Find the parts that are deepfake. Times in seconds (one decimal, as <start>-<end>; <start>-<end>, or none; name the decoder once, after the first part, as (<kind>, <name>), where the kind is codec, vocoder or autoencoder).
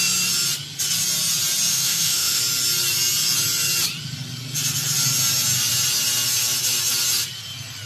1.7-2.4 (autoencoder, DAC-VAE)